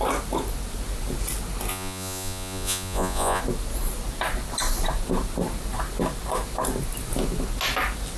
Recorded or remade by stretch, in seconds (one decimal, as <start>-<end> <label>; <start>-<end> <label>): 0.0-1.7 recorded; 1.7-3.4 remade; 3.4-8.2 recorded